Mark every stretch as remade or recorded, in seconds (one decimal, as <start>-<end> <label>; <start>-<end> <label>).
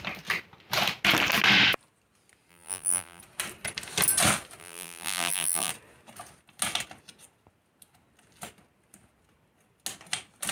0.0-2.5 recorded; 2.5-3.2 remade; 3.2-4.6 recorded; 4.6-5.7 remade; 5.7-10.5 recorded